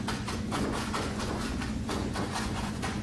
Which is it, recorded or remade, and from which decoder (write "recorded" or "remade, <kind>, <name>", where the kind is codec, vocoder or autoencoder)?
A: remade, vocoder, Vocos